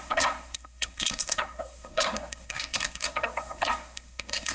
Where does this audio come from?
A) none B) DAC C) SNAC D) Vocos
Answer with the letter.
C